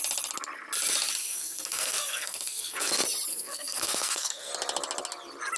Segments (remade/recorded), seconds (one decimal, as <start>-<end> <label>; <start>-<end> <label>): 0.0-1.2 recorded; 1.2-2.9 remade; 2.9-3.3 recorded; 3.3-4.5 remade; 4.5-5.6 recorded